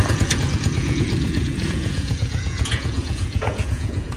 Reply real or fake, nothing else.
fake